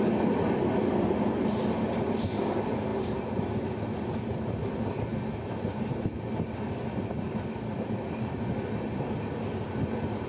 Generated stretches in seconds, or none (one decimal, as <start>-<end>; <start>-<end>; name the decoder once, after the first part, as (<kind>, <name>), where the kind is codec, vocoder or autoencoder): none